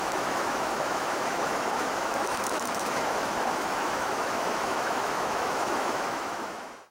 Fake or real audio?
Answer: fake